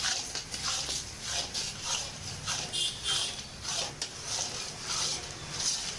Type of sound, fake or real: real